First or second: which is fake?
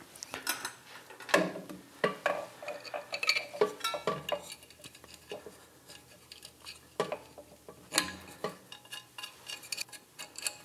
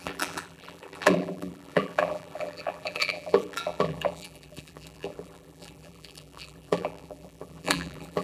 second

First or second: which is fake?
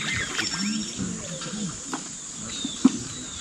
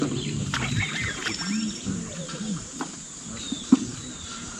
second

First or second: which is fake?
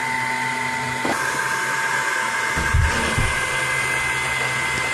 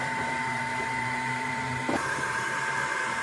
second